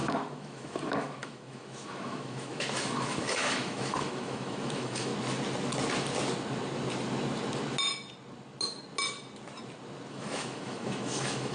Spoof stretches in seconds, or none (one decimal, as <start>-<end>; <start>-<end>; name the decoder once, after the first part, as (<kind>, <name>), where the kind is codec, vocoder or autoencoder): 0.0-5.1 (autoencoder, DAC-VAE); 10.1-11.5

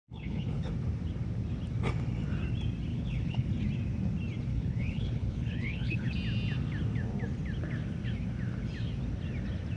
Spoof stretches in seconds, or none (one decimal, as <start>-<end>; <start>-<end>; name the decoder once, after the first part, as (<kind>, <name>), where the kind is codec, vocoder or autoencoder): 0.0-0.7 (codec, HILCodec); 2.9-3.5; 4.5-6.1

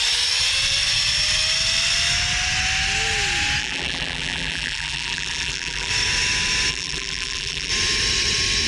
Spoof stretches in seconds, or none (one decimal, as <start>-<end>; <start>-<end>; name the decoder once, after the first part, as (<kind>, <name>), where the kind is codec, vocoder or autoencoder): 3.6-5.9 (vocoder, BigVGAN v2); 6.7-7.7

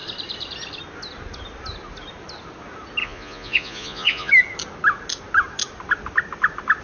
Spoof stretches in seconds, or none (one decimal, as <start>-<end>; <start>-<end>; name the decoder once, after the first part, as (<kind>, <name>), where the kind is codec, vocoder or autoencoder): 3.0-4.3 (vocoder, Vocos)